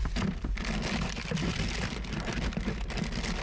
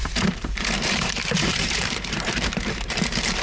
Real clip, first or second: first